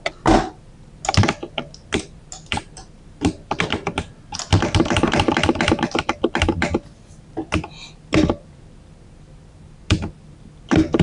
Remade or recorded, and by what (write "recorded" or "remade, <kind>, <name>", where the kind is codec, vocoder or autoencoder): recorded